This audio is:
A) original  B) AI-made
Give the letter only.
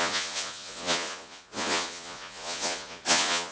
B